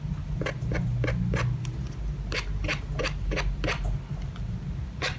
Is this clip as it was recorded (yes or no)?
yes